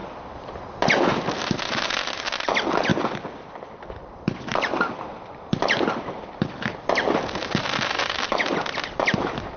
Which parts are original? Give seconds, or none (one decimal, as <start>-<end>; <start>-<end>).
0.0-9.6